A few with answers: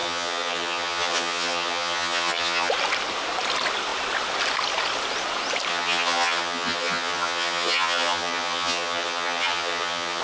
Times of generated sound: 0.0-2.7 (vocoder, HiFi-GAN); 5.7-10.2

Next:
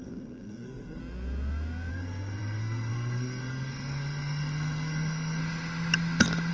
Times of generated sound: 0.0-1.0 (codec, SNAC); 1.9-5.4

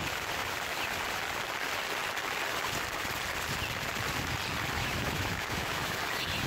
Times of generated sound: 4.8-6.0 (autoencoder, DAC-VAE)

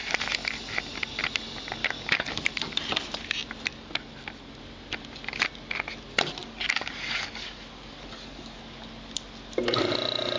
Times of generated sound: 1.8-2.4 (codec, DAC); 6.4-8.6

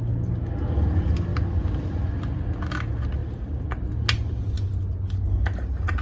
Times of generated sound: none

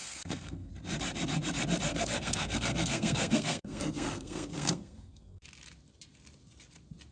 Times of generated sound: 0.0-0.7 (codec, SNAC); 1.9-5.4